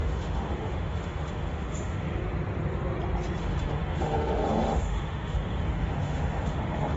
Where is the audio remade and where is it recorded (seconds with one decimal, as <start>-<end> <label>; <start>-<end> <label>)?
0.0-2.2 remade; 2.2-3.4 recorded; 3.4-7.0 remade